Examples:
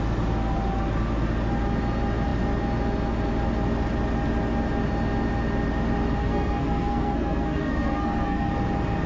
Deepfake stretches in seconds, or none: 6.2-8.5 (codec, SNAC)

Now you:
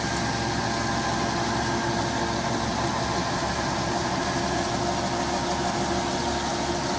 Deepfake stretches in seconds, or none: 2.7-4.8 (vocoder, BigVGAN v2)

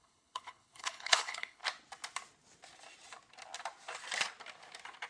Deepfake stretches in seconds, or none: 0.0-1.6 (codec, HILCodec)

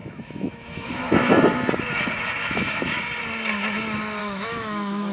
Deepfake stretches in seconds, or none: 0.0-1.3 (autoencoder, DAC-VAE); 2.4-3.0; 4.2-5.1

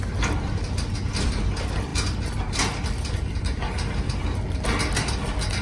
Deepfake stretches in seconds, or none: none